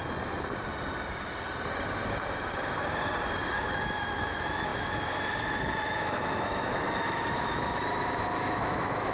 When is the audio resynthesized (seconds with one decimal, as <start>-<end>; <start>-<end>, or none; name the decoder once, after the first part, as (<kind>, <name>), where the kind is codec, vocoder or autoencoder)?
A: 3.5-9.1 (autoencoder, DAC-VAE)